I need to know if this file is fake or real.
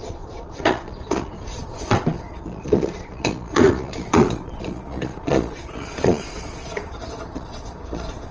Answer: fake